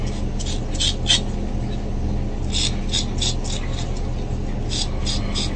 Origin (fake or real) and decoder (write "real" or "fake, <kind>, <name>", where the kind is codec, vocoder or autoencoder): real